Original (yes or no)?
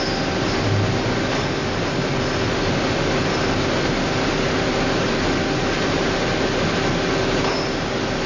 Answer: yes